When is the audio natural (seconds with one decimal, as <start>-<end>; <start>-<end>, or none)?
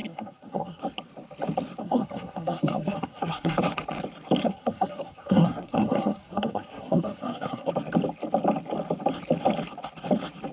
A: 0.8-1.8; 3.6-4.4; 7.7-10.5